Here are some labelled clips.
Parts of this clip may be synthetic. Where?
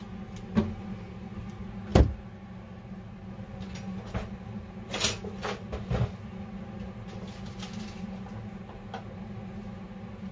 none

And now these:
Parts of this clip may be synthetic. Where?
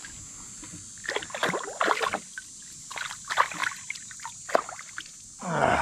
3.6-4.5 (vocoder, BigVGAN v2)